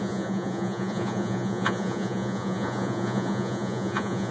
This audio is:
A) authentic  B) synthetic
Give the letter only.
B